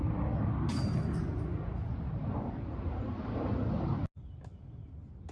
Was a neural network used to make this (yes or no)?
no